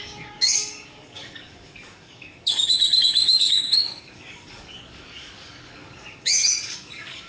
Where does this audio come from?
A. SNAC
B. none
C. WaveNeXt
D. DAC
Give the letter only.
D